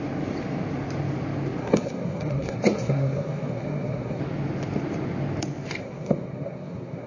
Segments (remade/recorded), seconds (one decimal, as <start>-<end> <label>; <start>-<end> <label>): 0.0-1.6 recorded; 1.6-4.2 remade; 4.2-5.8 recorded; 5.8-7.1 remade